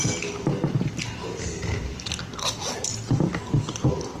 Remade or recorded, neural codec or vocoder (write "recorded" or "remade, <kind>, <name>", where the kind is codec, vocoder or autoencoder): recorded